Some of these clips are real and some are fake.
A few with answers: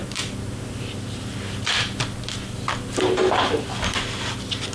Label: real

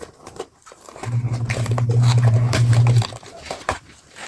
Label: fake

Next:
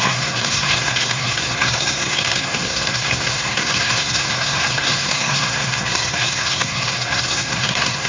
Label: fake